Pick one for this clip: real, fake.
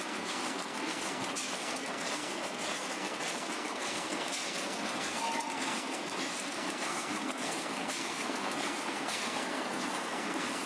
fake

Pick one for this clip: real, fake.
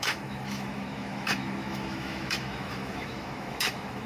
fake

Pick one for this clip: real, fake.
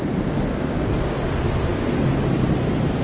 real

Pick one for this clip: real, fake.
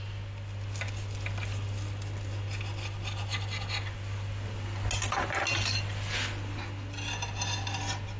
real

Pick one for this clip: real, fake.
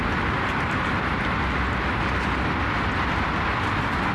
real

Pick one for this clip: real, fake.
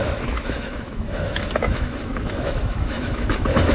fake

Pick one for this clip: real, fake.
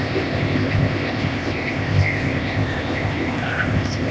fake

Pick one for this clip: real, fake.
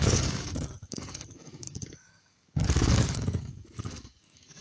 fake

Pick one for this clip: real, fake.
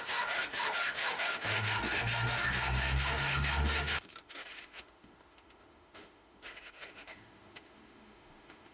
fake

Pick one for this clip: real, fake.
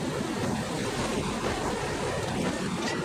real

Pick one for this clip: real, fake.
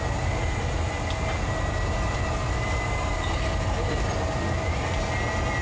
real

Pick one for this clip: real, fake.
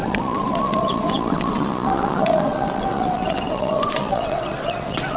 fake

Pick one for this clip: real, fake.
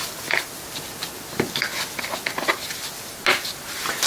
real